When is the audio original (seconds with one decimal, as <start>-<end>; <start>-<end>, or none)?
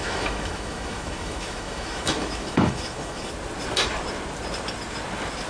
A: 3.3-5.5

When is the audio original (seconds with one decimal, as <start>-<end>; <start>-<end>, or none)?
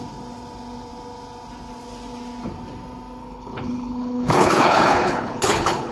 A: 0.0-3.2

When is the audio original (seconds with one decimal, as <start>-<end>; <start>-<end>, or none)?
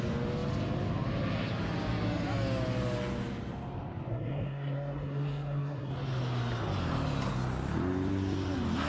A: 0.0-4.1; 5.9-8.9